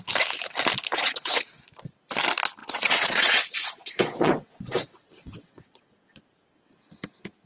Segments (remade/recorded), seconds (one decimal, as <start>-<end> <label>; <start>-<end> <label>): 0.0-0.9 recorded; 0.9-1.5 remade; 1.5-2.6 recorded; 2.6-6.2 remade; 6.2-7.5 recorded